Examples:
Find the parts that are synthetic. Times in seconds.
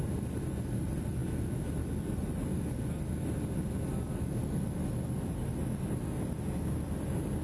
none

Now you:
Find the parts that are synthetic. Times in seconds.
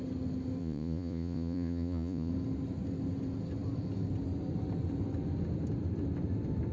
0.6-2.3